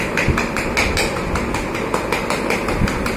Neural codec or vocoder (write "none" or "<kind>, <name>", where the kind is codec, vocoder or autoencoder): none